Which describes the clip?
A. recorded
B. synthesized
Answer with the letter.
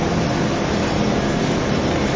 A